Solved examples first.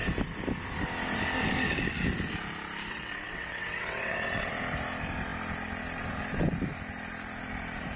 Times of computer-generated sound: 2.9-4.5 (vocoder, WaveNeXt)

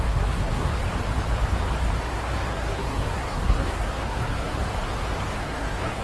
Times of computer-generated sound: 0.0-0.7 (codec, SNAC); 2.0-4.6; 5.4-6.0

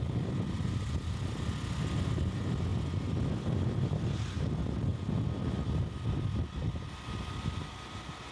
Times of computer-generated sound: none

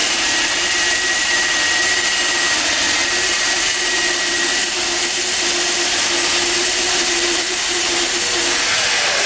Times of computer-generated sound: 0.0-4.8 (vocoder, BigVGAN v2); 6.6-7.9

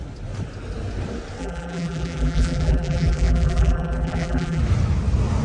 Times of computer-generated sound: 1.4-4.6 (vocoder, BigVGAN v2)